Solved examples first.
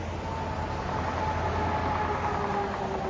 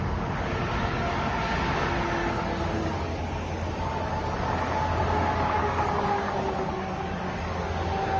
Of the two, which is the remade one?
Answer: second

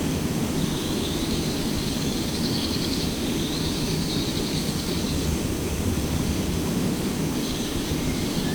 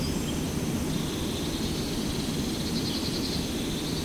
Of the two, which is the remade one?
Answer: first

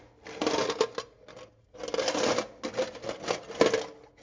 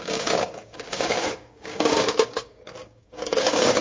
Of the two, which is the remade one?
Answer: second